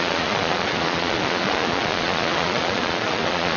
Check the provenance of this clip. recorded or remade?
remade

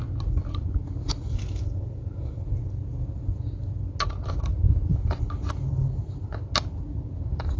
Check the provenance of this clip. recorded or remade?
recorded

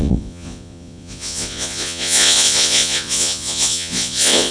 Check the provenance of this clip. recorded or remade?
remade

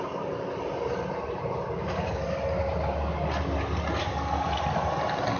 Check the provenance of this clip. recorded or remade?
recorded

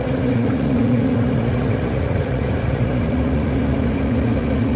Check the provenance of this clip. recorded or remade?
remade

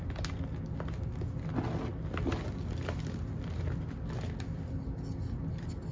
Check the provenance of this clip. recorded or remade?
recorded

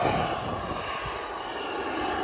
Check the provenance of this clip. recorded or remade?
recorded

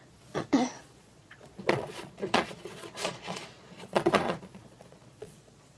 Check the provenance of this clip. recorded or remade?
remade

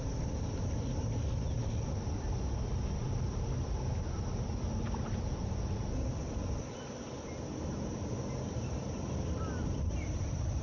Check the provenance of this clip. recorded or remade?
recorded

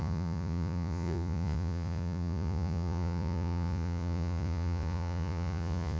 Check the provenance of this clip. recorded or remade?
remade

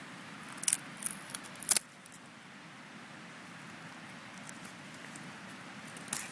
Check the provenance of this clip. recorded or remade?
recorded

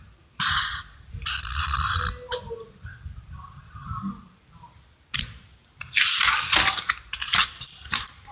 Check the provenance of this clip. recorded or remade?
recorded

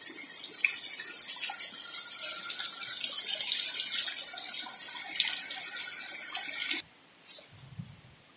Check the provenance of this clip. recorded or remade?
recorded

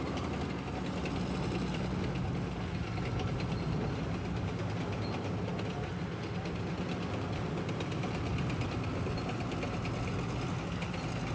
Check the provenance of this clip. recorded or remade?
recorded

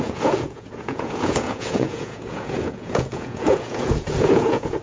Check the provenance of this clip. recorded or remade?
remade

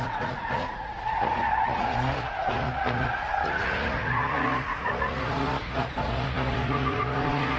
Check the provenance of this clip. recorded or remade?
remade